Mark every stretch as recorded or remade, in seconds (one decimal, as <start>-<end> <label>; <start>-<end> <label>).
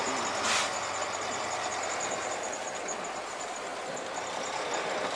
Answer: 0.0-5.2 recorded